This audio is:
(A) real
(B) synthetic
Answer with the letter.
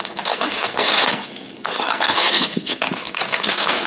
B